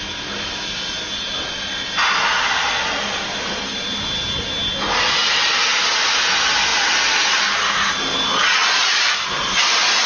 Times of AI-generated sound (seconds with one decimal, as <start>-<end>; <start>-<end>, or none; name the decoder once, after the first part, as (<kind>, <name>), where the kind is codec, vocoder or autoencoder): none